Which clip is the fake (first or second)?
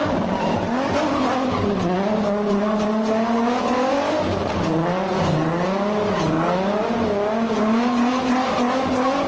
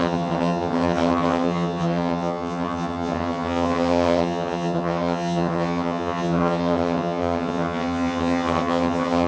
second